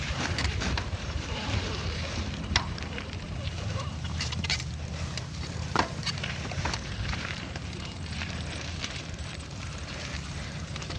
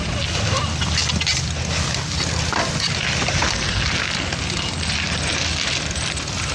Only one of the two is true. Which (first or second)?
second